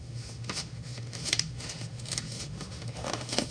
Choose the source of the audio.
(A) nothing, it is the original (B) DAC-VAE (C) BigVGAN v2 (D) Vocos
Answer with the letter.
B